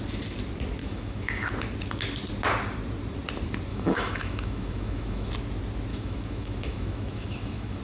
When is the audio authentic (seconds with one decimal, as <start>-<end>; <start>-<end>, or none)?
0.0-0.8; 1.5-3.7; 5.3-5.9